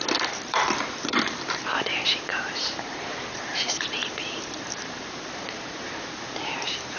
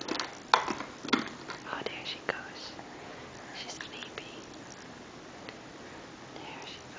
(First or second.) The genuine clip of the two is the second